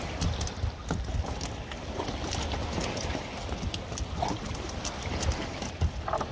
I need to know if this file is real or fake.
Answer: real